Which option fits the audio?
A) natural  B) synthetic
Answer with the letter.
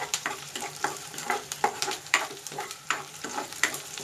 B